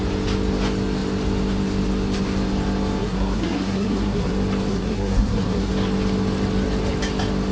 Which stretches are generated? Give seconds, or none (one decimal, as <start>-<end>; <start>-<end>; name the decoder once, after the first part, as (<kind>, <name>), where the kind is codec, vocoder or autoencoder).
3.0-4.3 (codec, SNAC); 4.7-5.7